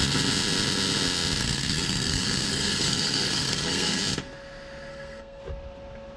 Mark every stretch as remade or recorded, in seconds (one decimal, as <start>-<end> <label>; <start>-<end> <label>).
0.0-1.4 recorded; 1.4-4.0 remade; 4.0-4.9 recorded; 4.9-5.4 remade; 5.4-6.2 recorded